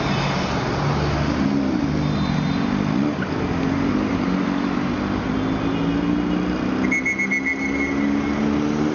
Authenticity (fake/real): real